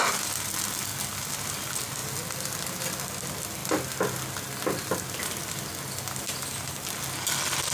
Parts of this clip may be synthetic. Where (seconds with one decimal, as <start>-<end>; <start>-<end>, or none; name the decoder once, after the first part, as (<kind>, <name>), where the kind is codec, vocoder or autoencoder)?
none